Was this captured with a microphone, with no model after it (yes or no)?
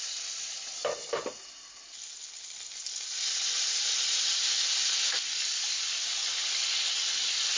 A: yes